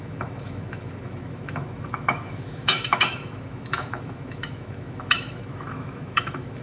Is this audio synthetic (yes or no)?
yes